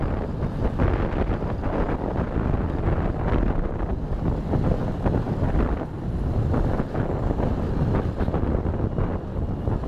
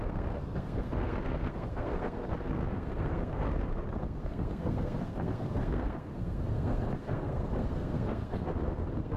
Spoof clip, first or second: second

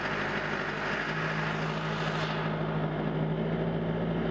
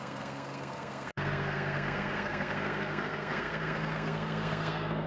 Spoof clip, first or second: second